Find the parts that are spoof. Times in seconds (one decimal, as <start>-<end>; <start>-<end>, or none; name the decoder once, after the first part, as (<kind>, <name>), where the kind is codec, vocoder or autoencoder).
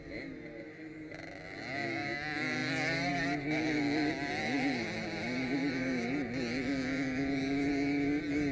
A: none